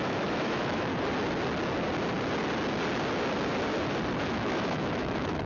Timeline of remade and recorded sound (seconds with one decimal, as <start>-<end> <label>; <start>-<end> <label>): 0.0-0.9 remade; 0.9-4.2 recorded; 4.2-5.5 remade